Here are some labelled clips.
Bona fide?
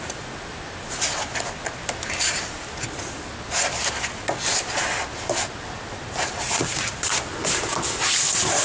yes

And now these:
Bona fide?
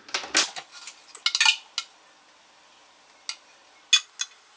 yes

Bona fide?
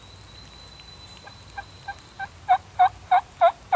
yes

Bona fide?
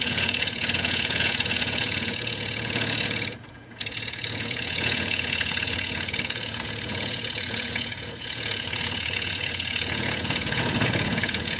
no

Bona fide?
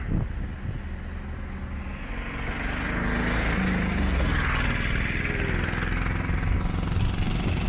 yes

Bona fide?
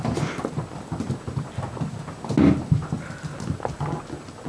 yes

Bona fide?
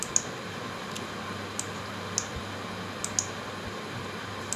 yes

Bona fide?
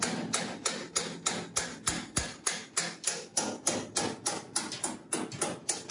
yes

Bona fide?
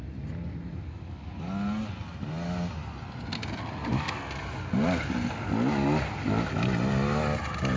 yes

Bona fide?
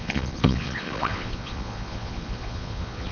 no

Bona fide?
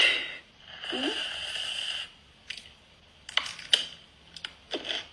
yes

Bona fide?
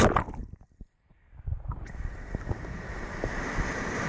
yes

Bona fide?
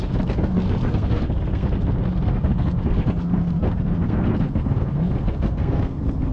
no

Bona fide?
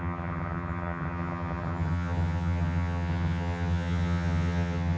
no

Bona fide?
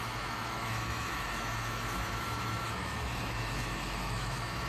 no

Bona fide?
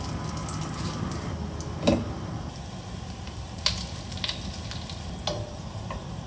yes